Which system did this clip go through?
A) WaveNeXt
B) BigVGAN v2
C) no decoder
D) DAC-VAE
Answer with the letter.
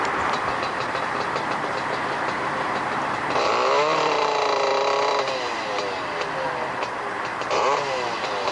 B